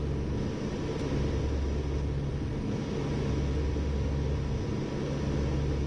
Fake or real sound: real